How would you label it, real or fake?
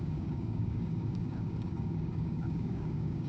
fake